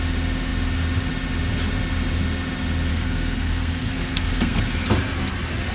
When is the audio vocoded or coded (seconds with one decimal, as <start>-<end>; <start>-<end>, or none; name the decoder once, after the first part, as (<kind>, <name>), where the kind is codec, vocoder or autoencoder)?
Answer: 2.9-4.6 (codec, SNAC)